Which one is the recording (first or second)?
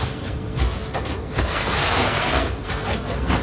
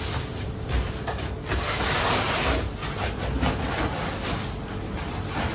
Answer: second